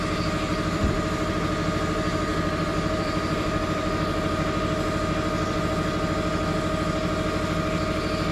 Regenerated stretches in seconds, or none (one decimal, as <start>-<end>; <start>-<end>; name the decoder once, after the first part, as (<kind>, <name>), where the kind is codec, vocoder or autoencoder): 0.5-1.3 (vocoder, BigVGAN v2); 2.3-5.6